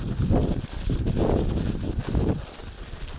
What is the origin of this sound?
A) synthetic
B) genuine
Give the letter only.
B